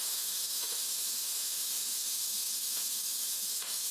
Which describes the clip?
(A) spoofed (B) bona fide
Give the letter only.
A